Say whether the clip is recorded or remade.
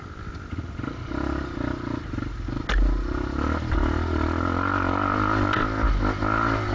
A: recorded